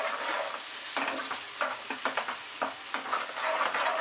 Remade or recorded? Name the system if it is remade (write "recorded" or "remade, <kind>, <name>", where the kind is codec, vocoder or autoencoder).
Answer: remade, vocoder, BigVGAN v2